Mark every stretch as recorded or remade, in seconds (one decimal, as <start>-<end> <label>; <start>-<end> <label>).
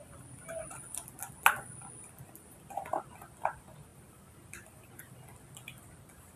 0.0-3.9 recorded; 3.9-5.0 remade; 5.0-6.4 recorded